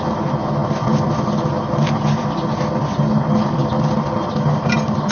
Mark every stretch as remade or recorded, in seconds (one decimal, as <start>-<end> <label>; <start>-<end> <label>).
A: 0.0-5.1 recorded